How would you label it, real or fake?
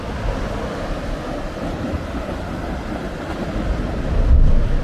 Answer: real